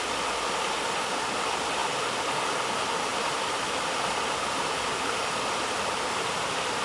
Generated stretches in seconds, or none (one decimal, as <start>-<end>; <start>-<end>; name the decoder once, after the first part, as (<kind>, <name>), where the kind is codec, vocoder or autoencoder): none